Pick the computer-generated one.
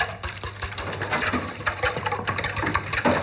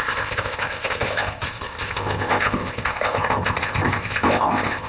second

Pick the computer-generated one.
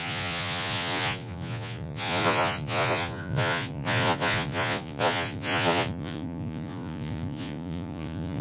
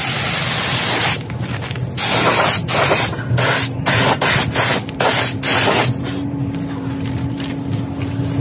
first